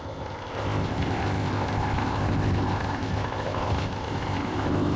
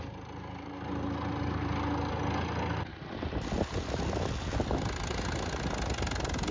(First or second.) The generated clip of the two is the first